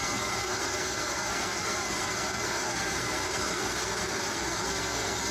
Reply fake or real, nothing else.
fake